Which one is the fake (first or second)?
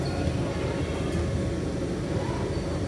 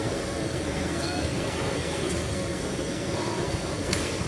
second